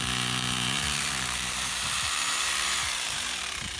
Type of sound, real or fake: fake